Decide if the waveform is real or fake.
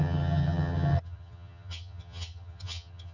fake